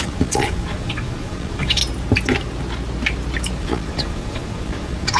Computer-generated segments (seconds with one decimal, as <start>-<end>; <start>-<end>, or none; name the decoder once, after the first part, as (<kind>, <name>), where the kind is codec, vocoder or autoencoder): 0.0-1.8 (vocoder, Vocos); 3.6-5.2